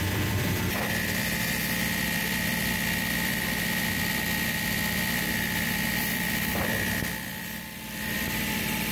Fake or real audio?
fake